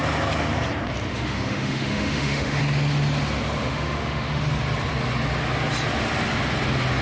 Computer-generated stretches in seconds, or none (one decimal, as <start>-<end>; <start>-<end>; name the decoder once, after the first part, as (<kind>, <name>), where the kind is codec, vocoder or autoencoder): 1.1-2.6 (autoencoder, DAC-VAE); 3.6-4.4